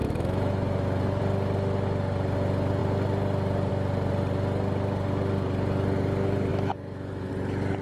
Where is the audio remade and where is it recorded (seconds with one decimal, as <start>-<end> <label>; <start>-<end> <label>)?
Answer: 0.0-1.2 remade; 1.2-6.5 recorded; 6.5-7.3 remade; 7.3-7.8 recorded